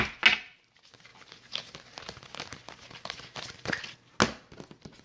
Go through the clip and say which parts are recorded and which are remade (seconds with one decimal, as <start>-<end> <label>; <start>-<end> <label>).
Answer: 0.0-5.0 recorded